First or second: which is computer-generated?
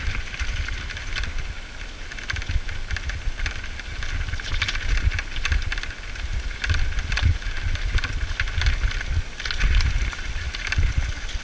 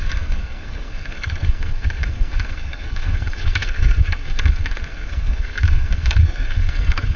second